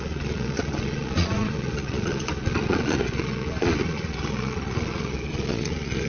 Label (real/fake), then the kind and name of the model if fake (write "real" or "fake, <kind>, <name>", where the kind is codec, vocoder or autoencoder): fake, vocoder, Vocos